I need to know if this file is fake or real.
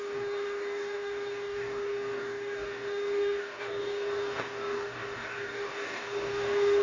fake